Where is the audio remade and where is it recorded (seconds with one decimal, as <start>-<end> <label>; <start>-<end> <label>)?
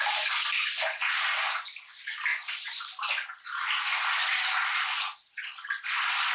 0.0-6.3 recorded